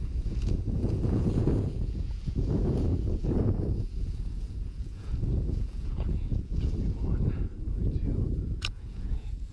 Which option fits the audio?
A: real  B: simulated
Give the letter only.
B